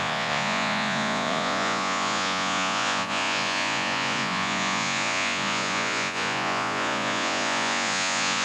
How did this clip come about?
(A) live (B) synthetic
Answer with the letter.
B